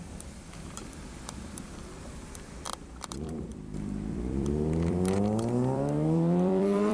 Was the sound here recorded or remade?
remade